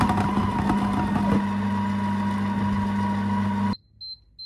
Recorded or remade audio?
recorded